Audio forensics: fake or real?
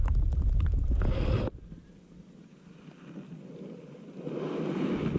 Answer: real